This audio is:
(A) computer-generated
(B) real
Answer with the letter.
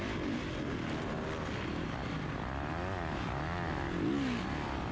B